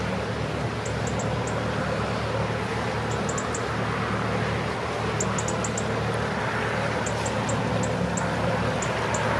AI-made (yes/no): no